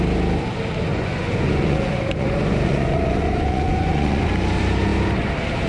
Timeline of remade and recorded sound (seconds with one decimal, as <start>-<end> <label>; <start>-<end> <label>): 0.0-0.9 recorded; 0.9-4.3 remade; 4.3-5.7 recorded